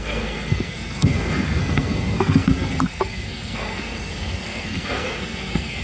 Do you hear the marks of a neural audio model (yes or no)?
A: yes